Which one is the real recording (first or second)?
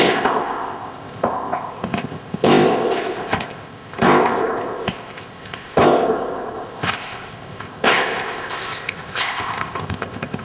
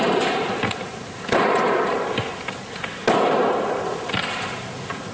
second